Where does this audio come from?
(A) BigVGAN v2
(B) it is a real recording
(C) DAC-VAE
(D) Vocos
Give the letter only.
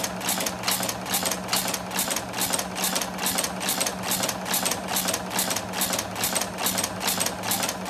B